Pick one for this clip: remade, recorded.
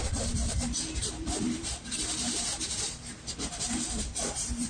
remade